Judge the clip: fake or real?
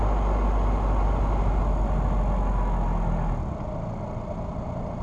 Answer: real